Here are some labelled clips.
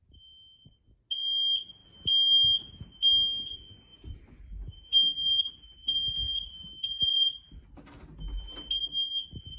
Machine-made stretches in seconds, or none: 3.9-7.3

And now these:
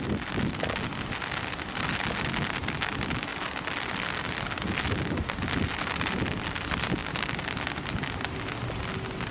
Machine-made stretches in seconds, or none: none

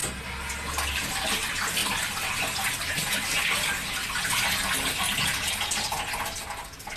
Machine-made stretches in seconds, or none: none

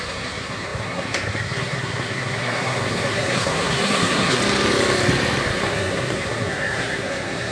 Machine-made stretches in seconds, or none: 0.0-4.4; 5.4-7.5

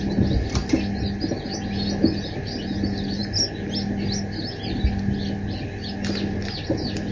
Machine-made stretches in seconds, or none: none

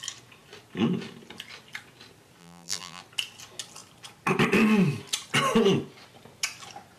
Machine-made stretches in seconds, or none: 2.4-3.0

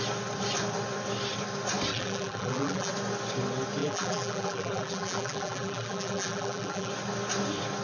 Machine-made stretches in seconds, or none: 1.9-2.9; 3.8-6.9